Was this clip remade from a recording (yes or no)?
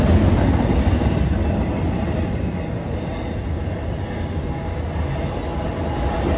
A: no